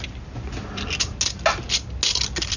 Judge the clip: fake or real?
real